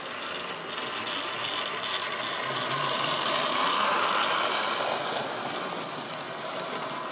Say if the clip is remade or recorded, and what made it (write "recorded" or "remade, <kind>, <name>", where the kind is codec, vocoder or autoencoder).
recorded